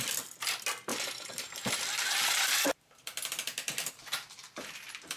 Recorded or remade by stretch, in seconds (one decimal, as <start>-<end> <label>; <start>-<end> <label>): 0.0-0.9 recorded; 0.9-3.9 remade; 3.9-5.2 recorded